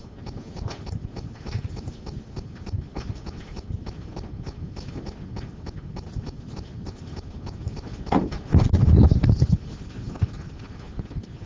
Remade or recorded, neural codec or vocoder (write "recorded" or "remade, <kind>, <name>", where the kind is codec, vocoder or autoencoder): recorded